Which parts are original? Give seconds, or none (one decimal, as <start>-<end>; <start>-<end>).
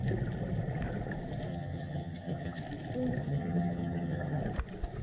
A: 0.0-1.5; 2.6-3.2; 4.4-5.0